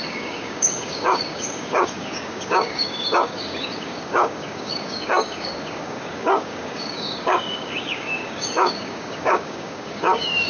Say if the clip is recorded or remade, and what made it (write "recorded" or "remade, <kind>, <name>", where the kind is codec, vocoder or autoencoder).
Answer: remade, codec, DAC